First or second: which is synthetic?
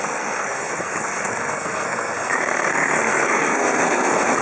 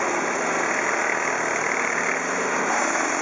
first